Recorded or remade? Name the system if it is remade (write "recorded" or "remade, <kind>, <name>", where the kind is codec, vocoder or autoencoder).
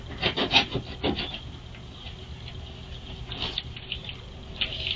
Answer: recorded